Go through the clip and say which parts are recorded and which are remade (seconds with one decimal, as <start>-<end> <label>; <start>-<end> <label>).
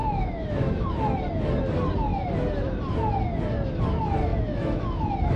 0.0-0.9 remade; 0.9-4.3 recorded; 4.3-5.0 remade; 5.0-5.4 recorded